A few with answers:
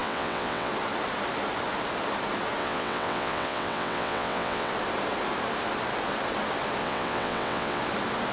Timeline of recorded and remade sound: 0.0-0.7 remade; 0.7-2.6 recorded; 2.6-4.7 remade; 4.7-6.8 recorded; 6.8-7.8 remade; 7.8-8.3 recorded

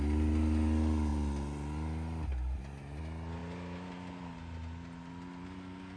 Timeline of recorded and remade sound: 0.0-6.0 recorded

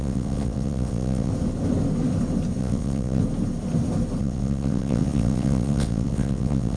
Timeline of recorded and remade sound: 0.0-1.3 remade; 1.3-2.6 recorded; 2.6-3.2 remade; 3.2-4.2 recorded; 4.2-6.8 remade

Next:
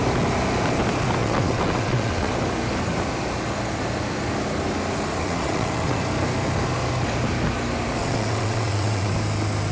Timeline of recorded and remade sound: 0.0-1.2 recorded; 1.2-2.3 remade; 2.3-5.2 recorded; 5.2-6.0 remade; 6.0-8.0 recorded; 8.0-9.1 remade; 9.1-9.7 recorded

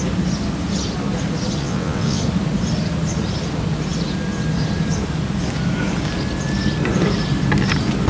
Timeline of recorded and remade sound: 0.0-1.6 recorded; 1.6-2.2 remade; 2.2-8.1 recorded

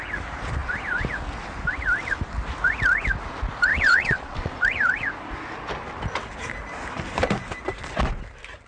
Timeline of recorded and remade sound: 0.0-3.7 recorded; 3.7-4.5 remade; 4.5-8.7 recorded